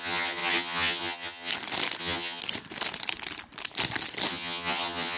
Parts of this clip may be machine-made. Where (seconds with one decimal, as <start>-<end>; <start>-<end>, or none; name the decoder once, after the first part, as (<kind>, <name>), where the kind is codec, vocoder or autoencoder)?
0.0-1.5 (vocoder, HiFi-GAN); 2.0-2.4; 4.3-5.2